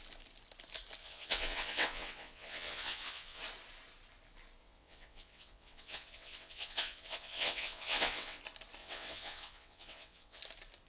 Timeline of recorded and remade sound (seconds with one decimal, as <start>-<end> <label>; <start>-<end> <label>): 0.0-1.0 recorded; 1.0-3.4 remade; 3.4-4.6 recorded; 4.6-8.4 remade; 8.4-8.8 recorded; 8.8-10.4 remade; 10.4-10.9 recorded

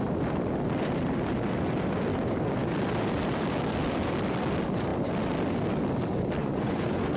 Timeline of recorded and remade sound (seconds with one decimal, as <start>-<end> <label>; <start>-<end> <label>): 0.0-6.4 recorded; 6.4-7.2 remade